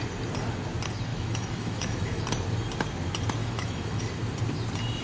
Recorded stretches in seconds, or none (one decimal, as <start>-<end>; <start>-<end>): 0.0-1.1; 2.2-3.4; 4.0-5.0